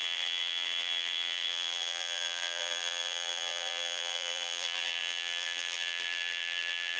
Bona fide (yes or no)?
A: no